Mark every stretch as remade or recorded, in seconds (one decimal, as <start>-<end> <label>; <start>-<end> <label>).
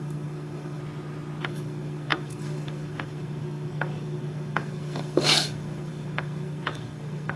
0.0-0.8 remade; 0.8-1.4 recorded; 1.4-7.4 remade